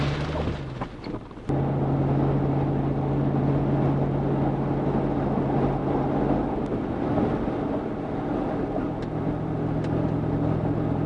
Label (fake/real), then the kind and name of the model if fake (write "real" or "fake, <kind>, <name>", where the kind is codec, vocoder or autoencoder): real